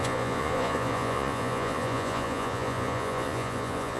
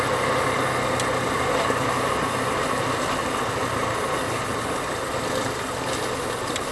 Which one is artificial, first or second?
first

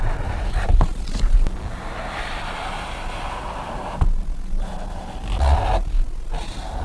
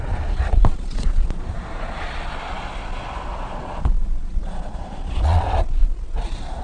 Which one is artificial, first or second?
second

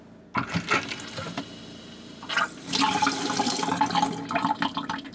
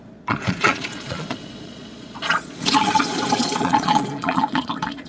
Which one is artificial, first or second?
second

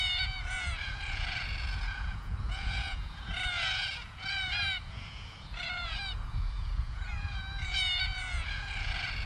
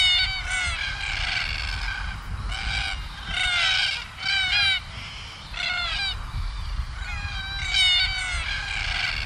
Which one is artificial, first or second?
first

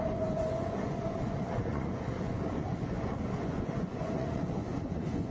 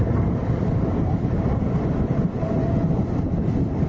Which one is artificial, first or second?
first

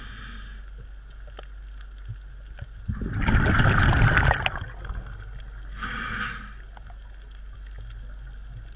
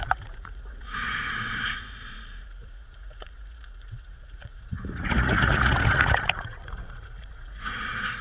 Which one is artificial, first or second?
second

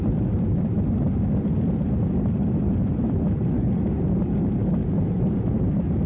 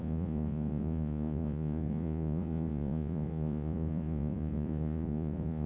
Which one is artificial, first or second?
second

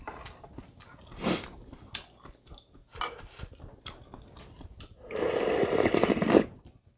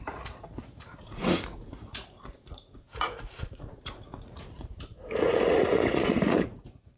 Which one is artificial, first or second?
second